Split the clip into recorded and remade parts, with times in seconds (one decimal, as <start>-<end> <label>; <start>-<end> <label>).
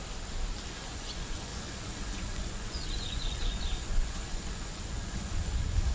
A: 0.0-0.7 recorded; 0.7-5.9 remade